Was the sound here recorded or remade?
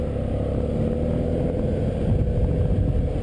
recorded